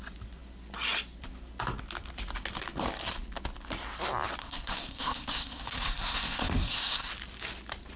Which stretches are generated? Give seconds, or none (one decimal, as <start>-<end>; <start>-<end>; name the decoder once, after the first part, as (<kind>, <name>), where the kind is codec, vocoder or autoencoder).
4.4-7.1 (codec, SNAC)